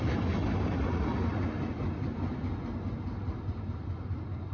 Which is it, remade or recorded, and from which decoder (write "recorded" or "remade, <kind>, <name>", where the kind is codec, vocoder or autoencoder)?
recorded